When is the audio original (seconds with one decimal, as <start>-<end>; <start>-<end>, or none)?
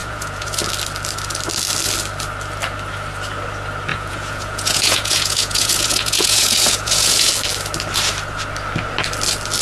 0.6-3.9; 7.3-9.6